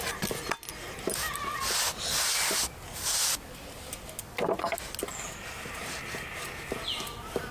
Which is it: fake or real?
real